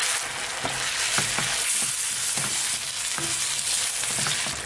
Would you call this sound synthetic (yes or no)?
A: no